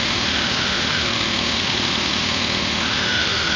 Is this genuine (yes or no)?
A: no